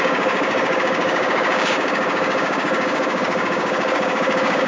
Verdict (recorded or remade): remade